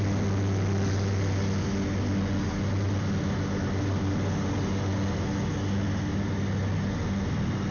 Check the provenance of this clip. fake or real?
real